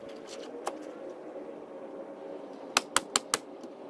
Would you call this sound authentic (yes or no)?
yes